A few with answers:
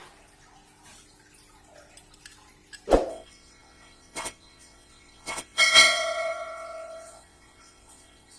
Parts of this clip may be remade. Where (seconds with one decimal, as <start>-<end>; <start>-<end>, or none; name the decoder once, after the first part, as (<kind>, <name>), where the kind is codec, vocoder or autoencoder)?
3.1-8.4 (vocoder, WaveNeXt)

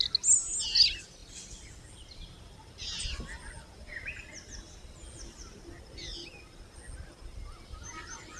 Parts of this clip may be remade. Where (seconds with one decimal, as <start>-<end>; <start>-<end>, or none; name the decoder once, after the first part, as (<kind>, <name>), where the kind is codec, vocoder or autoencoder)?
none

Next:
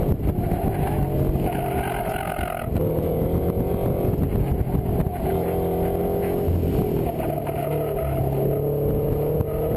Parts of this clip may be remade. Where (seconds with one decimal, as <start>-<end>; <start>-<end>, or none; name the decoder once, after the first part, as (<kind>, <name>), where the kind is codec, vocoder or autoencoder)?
none

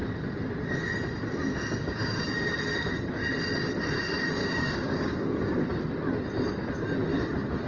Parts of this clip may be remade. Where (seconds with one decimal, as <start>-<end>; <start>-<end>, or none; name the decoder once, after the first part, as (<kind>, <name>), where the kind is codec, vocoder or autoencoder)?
1.5-2.5 (codec, DAC); 4.4-5.6

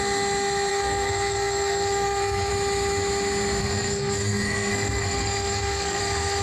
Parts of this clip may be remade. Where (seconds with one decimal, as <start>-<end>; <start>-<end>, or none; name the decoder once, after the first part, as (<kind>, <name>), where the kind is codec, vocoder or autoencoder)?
0.7-2.5 (codec, SNAC); 3.6-6.0